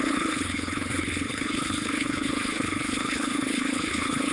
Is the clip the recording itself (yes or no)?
no